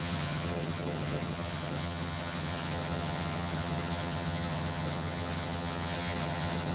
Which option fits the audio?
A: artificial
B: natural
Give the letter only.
A